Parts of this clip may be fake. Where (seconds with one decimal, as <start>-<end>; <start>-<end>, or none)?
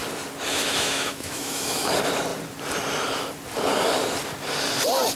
0.5-1.9